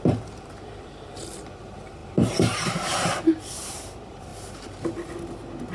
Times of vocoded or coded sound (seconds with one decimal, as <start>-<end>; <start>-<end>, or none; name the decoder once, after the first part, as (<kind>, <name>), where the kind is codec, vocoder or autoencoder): 0.0-4.3 (vocoder, BigVGAN v2)